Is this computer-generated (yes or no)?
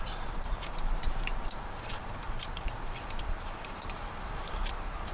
yes